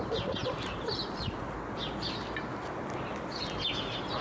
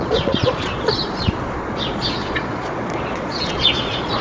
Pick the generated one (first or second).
second